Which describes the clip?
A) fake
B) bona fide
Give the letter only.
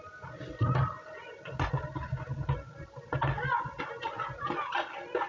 B